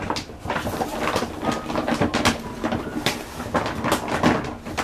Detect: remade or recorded recorded